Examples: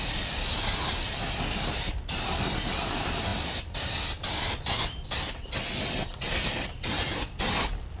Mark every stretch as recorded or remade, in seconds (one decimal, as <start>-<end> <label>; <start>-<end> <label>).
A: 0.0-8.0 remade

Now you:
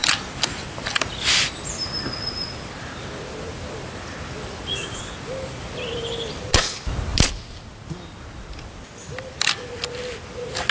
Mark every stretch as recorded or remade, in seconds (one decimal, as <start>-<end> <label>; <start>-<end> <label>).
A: 0.0-1.6 remade; 1.6-10.7 recorded

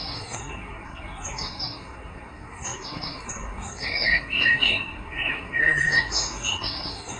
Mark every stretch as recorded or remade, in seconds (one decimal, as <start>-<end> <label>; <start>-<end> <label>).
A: 0.0-7.2 remade

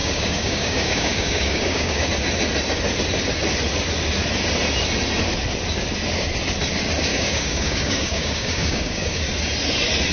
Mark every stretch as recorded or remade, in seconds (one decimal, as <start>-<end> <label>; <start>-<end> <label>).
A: 0.0-2.1 remade; 2.1-7.1 recorded; 7.1-9.2 remade; 9.2-10.1 recorded